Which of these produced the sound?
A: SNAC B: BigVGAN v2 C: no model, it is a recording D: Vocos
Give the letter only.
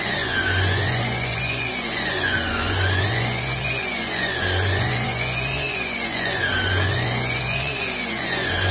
D